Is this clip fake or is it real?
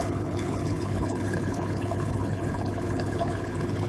fake